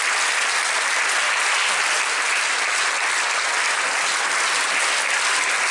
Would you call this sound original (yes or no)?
yes